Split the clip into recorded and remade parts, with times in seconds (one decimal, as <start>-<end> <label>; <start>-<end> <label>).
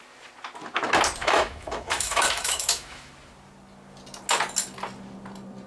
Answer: 0.0-1.2 recorded; 1.2-3.1 remade; 3.1-5.7 recorded